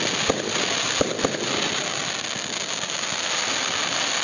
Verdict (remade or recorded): recorded